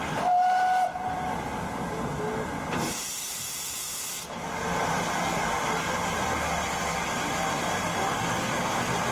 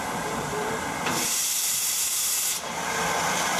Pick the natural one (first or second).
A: first